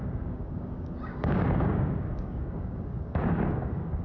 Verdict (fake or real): fake